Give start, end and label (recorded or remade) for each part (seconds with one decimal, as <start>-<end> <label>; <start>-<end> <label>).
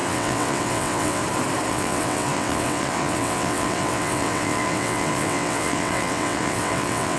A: 0.0-1.2 remade; 1.2-1.7 recorded; 1.7-7.2 remade